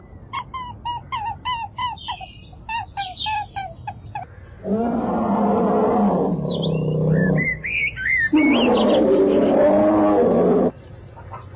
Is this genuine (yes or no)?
yes